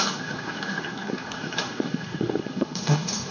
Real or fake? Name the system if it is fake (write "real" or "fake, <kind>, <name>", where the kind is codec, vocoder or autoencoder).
fake, codec, SNAC